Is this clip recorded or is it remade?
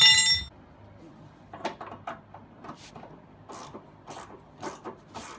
recorded